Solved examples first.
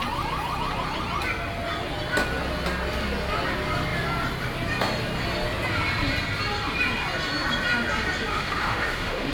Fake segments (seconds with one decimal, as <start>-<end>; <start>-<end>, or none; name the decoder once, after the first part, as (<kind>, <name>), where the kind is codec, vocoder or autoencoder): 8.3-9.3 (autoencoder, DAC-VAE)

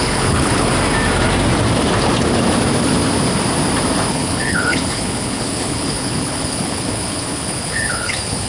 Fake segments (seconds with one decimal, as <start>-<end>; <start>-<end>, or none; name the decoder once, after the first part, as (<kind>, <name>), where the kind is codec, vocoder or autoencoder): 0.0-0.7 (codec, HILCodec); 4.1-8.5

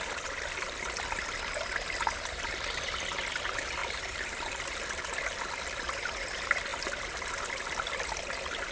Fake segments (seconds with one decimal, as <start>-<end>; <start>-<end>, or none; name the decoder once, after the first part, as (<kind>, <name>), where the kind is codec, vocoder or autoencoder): 3.8-5.5 (vocoder, BigVGAN v2)

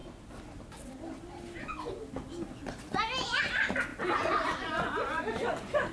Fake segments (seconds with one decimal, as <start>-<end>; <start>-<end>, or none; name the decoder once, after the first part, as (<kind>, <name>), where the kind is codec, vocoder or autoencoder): none

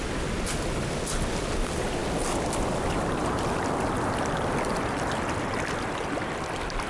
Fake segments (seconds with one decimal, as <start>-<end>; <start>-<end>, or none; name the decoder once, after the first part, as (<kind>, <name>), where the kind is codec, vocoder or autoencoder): none

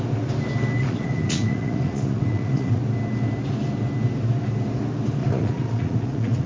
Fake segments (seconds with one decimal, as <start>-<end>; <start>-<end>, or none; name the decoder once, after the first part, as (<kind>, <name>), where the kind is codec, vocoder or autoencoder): 0.8-2.8 (vocoder, Vocos); 5.2-6.5

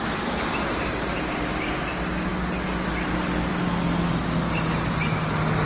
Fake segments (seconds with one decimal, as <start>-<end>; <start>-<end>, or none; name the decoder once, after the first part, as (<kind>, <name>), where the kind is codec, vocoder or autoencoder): none

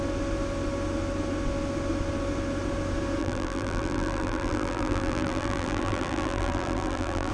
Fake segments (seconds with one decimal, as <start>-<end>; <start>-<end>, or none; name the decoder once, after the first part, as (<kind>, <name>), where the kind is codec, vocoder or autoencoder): 3.2-7.3 (vocoder, BigVGAN v2)